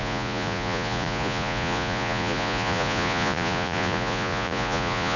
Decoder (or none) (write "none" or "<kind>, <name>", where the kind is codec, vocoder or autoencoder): vocoder, Vocos